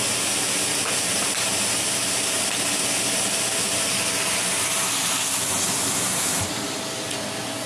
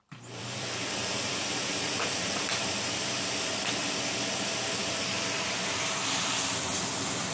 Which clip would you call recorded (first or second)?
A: first